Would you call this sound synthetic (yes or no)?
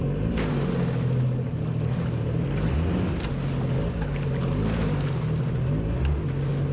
no